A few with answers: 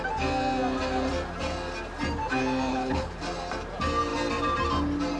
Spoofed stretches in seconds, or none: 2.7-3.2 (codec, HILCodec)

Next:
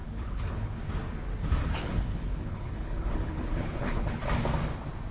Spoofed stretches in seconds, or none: 0.0-0.8 (codec, HILCodec); 1.6-4.2

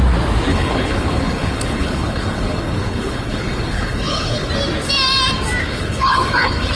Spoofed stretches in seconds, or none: 0.5-4.5 (codec, HILCodec); 5.6-6.7